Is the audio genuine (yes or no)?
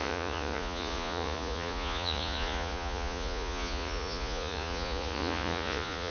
no